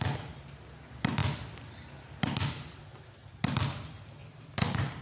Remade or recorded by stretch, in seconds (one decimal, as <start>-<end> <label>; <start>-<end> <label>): 0.0-4.2 recorded; 4.2-5.0 remade